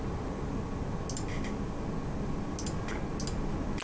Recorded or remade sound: recorded